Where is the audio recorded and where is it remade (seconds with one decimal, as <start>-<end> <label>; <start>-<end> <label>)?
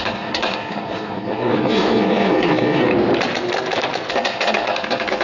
0.0-2.9 remade; 2.9-4.1 recorded; 4.1-5.2 remade